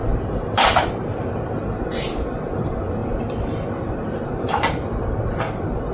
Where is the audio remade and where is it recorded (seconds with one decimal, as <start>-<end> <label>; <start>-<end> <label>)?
0.0-5.9 recorded